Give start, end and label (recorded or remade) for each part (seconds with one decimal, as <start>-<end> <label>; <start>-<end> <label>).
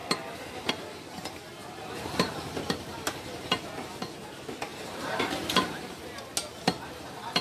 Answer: 0.0-1.6 recorded; 1.6-3.3 remade; 3.3-4.7 recorded; 4.7-6.0 remade; 6.0-7.4 recorded